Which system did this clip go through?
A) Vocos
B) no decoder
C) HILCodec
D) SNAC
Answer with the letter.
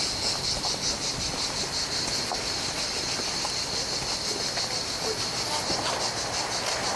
B